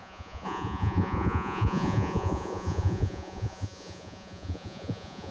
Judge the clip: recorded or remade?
remade